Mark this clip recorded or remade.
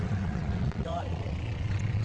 remade